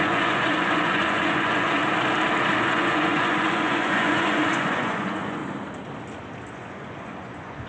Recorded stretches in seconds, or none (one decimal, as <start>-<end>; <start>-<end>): 1.8-2.6; 5.4-6.5